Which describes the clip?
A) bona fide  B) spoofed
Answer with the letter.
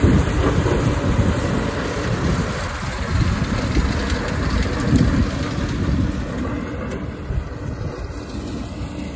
A